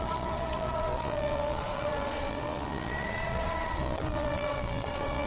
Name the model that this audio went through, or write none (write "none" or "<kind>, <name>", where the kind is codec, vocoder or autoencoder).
vocoder, Vocos